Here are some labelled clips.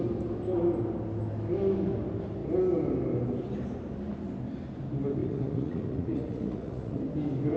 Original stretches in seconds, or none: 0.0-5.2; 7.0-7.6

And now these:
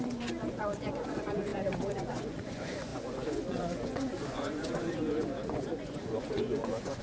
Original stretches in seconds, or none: none

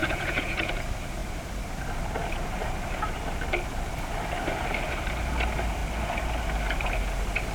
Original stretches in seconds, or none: 0.7-7.5